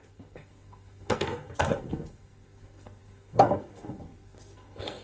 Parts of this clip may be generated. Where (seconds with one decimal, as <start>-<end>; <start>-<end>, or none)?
0.0-5.0